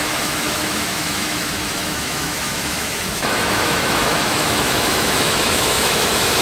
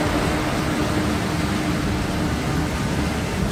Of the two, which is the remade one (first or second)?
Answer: first